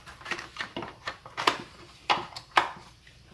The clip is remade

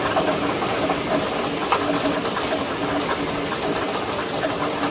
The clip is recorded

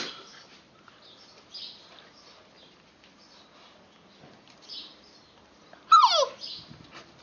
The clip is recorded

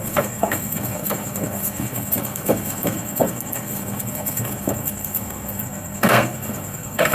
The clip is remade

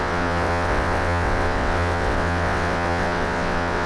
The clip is remade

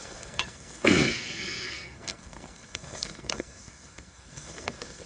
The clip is remade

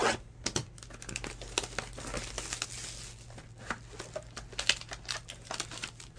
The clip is recorded